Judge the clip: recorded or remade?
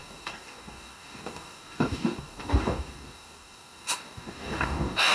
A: remade